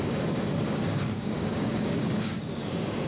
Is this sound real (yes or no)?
no